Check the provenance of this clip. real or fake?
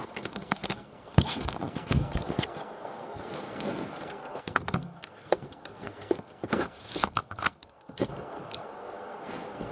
fake